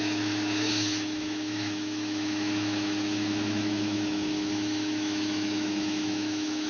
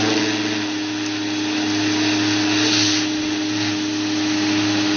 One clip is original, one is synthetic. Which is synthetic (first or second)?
first